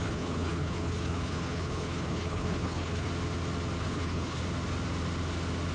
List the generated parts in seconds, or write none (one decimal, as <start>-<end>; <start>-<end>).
0.0-3.1; 3.8-4.4